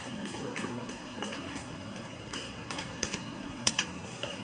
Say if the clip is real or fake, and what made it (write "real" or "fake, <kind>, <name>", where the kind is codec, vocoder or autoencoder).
fake, codec, SNAC